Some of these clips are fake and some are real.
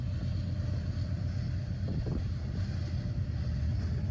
real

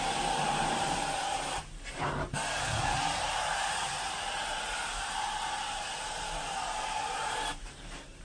fake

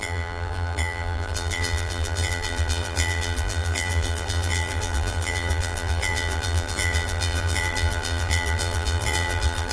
fake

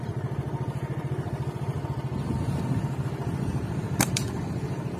fake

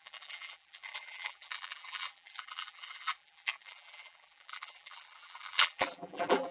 fake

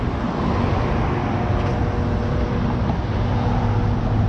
real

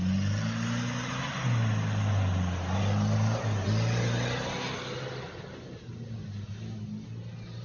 real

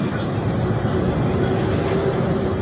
real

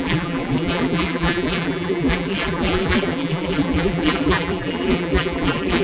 fake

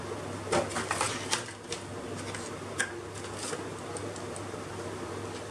real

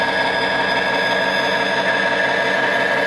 real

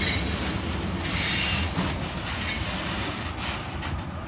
real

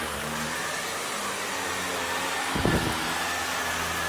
real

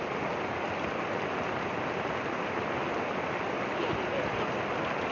real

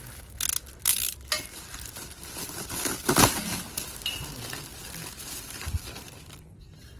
real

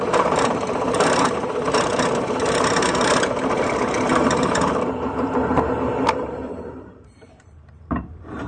fake